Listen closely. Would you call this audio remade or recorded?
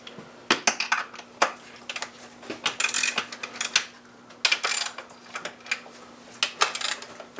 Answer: recorded